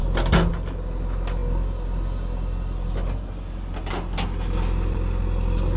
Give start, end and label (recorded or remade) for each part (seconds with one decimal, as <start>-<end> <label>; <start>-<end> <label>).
0.0-5.8 recorded